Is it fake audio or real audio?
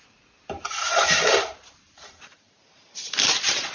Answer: fake